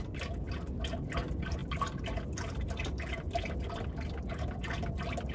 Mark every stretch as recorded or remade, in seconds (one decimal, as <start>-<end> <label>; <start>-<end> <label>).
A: 0.0-5.3 recorded